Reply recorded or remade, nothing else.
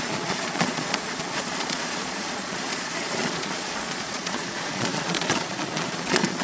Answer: remade